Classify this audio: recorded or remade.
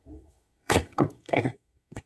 remade